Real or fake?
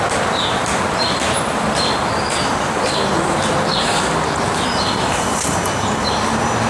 fake